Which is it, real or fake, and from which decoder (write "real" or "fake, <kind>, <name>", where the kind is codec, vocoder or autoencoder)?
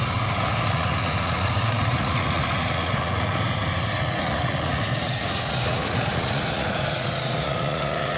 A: fake, vocoder, Vocos